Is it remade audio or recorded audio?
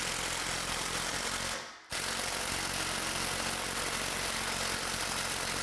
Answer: recorded